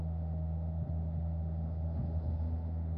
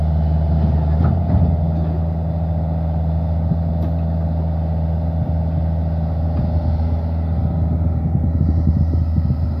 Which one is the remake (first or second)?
first